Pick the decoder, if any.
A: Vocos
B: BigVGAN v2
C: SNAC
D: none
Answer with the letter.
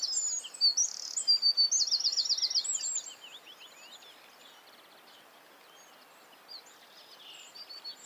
D